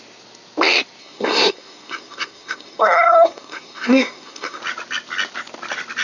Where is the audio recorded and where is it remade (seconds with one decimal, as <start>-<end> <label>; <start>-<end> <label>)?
0.0-1.0 recorded; 1.0-4.6 remade; 4.6-6.0 recorded

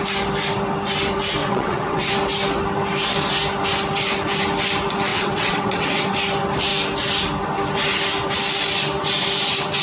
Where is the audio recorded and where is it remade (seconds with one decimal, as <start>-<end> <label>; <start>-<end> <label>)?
0.0-1.4 recorded; 1.4-2.1 remade; 2.1-5.1 recorded; 5.1-6.2 remade; 6.2-9.8 recorded

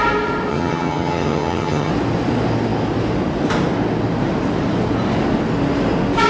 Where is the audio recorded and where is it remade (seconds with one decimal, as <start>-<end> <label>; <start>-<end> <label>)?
0.0-0.5 recorded; 0.5-1.9 remade; 1.9-6.3 recorded